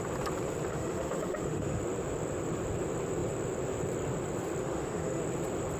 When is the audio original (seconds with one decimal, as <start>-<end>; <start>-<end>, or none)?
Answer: 0.0-0.7; 1.8-4.6; 5.2-5.8